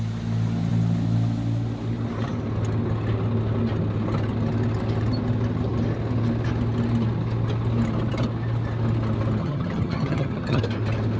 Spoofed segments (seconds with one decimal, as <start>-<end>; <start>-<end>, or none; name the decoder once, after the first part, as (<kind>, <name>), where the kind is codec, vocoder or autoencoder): 9.4-10.6 (vocoder, HiFi-GAN)